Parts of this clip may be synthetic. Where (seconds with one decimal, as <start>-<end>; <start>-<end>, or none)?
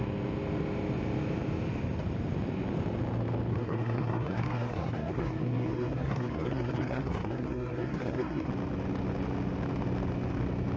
3.5-8.5